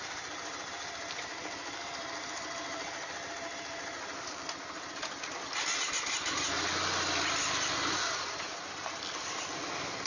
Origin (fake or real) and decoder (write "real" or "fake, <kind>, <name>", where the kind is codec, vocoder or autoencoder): real